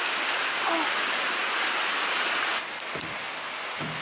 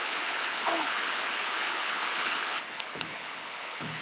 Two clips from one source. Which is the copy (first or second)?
second